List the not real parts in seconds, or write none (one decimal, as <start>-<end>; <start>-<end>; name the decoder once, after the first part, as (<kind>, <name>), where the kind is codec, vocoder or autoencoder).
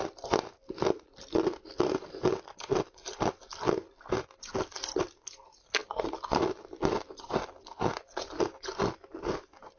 none